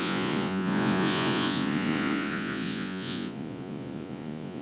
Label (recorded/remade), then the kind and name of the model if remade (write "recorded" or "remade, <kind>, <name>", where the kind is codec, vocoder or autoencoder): remade, vocoder, Vocos